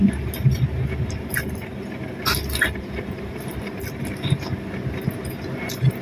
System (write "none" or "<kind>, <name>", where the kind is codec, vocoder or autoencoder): none